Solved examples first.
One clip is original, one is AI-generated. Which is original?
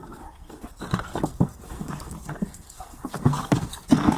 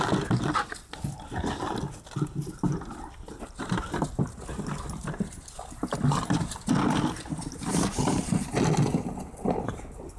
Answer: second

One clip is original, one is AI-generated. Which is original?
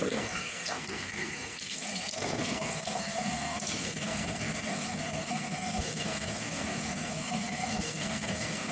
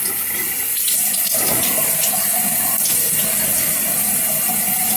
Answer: second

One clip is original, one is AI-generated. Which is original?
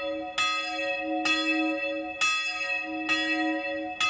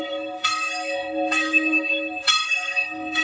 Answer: first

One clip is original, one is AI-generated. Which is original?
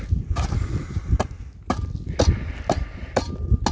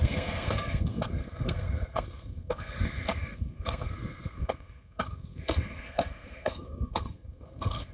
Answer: first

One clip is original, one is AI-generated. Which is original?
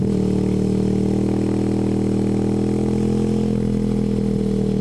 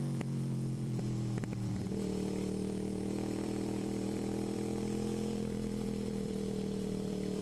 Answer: first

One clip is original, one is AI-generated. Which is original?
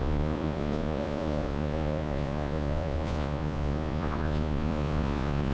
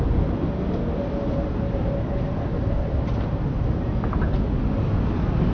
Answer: second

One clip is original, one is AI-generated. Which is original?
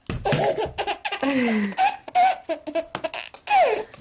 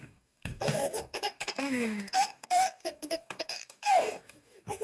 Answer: first